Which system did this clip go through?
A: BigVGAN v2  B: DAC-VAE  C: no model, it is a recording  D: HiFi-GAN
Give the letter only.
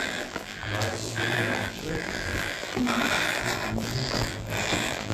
A